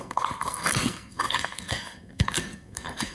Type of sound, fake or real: fake